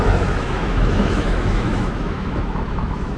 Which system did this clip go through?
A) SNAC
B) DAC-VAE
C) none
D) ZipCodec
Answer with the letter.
B